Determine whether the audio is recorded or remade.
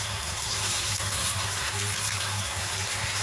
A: remade